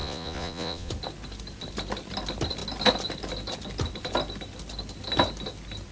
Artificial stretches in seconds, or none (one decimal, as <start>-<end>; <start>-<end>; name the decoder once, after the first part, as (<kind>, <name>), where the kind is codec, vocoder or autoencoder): 0.0-0.9 (vocoder, Vocos)